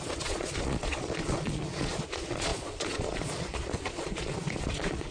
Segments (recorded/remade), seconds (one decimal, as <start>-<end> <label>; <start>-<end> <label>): 0.0-5.1 remade